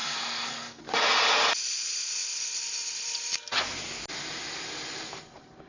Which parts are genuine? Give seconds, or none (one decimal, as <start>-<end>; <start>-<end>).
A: 0.8-5.7